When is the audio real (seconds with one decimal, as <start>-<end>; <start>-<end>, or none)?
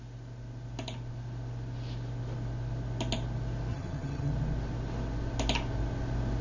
0.0-3.7; 4.3-6.4